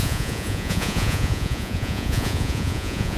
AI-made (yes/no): yes